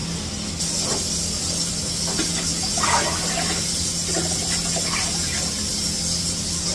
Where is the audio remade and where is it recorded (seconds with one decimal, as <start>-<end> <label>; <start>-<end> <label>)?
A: 0.0-6.7 recorded